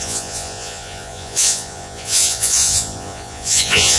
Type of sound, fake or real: fake